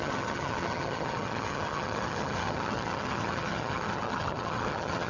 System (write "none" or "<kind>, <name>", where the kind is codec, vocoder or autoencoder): vocoder, HiFi-GAN